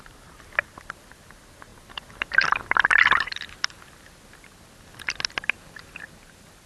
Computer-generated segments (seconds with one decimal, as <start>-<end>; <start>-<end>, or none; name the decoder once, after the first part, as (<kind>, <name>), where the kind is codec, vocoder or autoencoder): none